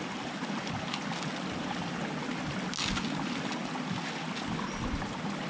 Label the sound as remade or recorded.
recorded